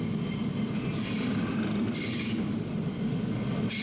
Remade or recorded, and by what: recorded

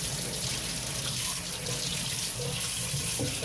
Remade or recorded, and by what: recorded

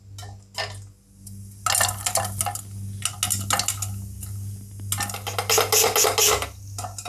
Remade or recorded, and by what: recorded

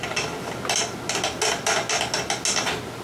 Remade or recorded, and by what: recorded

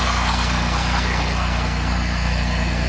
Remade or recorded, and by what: remade, codec, SNAC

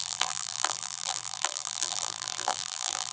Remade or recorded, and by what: remade, vocoder, BigVGAN v2